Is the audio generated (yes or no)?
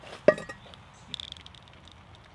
no